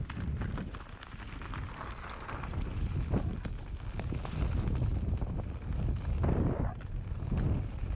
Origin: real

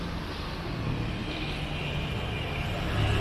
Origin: real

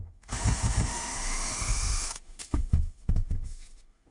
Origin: fake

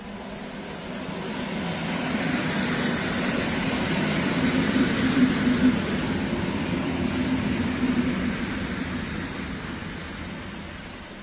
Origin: real